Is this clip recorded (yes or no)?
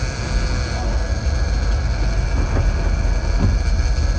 yes